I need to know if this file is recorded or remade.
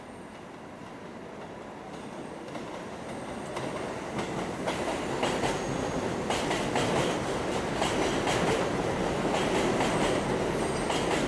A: recorded